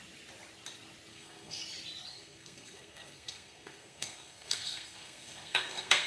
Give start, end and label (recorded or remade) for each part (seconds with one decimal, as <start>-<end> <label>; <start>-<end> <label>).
0.0-1.1 recorded; 1.1-1.6 remade; 1.6-2.1 recorded; 2.1-6.1 remade